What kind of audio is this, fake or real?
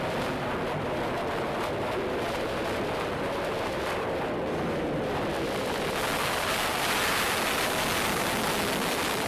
real